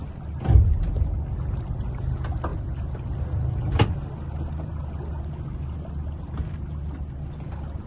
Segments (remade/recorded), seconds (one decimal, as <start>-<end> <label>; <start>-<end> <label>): 0.0-7.9 recorded